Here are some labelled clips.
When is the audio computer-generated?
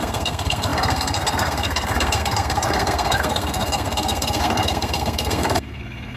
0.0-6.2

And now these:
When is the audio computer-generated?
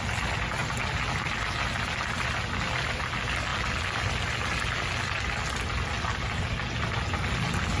none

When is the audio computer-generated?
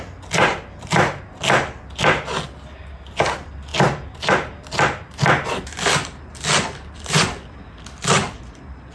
none